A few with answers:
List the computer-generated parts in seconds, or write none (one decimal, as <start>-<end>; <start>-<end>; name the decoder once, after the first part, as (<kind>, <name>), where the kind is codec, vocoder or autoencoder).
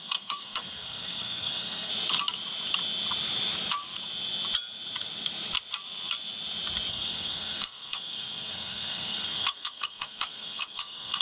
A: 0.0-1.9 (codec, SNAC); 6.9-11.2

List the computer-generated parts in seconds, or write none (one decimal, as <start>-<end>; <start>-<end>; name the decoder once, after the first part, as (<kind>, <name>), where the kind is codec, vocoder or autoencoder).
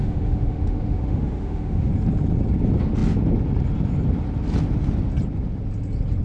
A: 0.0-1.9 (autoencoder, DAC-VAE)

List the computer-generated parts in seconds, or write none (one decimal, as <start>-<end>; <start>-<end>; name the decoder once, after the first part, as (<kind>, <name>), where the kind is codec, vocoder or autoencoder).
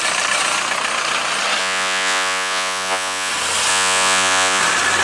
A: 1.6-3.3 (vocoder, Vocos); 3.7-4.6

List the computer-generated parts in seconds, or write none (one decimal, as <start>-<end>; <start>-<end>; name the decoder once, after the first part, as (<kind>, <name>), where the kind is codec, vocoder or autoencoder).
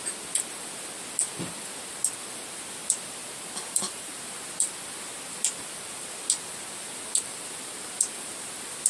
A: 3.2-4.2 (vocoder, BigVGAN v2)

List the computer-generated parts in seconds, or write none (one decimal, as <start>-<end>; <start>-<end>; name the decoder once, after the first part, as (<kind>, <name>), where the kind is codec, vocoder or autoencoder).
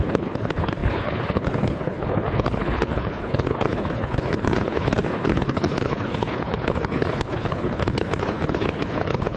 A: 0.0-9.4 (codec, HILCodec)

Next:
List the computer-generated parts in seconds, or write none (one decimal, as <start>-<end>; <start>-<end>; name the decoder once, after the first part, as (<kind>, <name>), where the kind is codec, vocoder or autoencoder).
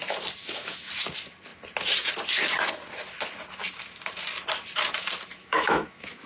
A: 0.4-0.9 (autoencoder, DAC-VAE); 5.4-6.3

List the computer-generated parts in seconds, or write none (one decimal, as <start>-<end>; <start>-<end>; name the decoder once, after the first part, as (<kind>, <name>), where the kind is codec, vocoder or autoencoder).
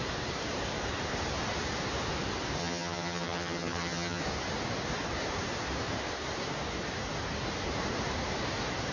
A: 2.6-4.2 (vocoder, HiFi-GAN)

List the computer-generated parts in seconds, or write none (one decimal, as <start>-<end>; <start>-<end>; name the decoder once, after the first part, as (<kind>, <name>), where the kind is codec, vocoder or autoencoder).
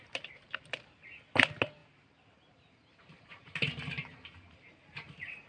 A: 1.8-5.1 (vocoder, BigVGAN v2)